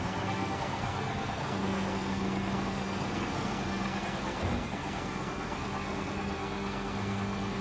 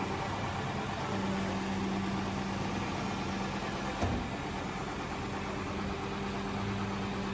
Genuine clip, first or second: second